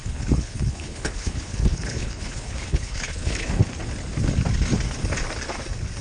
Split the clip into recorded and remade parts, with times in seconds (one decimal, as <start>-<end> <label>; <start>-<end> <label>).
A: 0.0-3.6 remade; 3.6-6.0 recorded